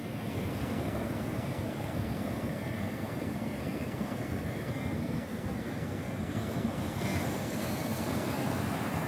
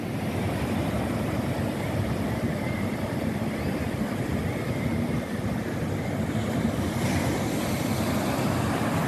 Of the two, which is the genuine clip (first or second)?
second